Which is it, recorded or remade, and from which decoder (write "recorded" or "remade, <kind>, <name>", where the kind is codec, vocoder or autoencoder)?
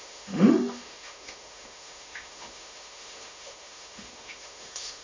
remade, autoencoder, DAC-VAE